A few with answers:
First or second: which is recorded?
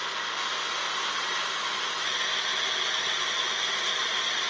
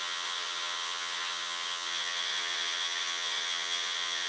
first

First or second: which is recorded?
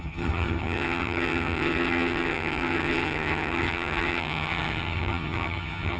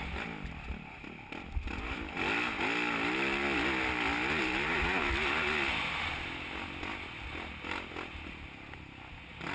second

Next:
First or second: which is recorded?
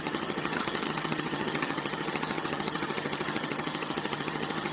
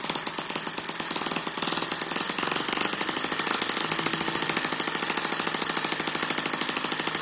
second